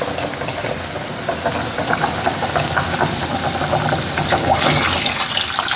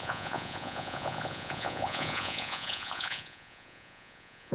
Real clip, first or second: first